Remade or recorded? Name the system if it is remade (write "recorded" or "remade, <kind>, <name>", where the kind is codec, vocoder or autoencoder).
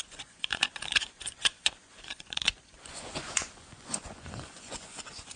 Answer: remade, vocoder, Vocos